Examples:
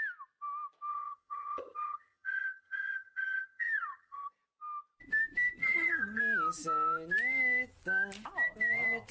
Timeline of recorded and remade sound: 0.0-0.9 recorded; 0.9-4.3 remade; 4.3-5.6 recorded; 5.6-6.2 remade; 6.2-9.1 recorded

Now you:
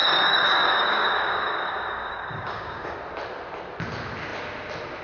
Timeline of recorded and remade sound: 0.0-3.0 remade; 3.0-5.0 recorded

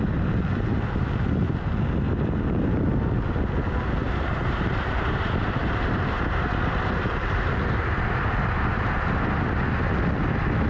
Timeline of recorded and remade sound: 0.0-4.0 recorded; 4.0-9.0 remade; 9.0-10.7 recorded

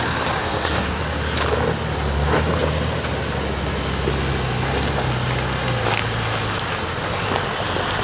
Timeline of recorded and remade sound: 0.0-0.4 recorded; 0.4-1.0 remade; 1.0-8.0 recorded